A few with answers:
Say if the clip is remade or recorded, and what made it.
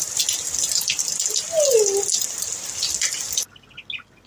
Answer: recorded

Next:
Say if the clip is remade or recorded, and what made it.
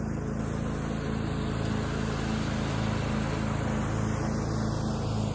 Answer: recorded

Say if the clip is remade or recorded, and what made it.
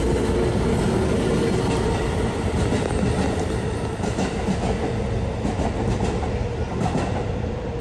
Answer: recorded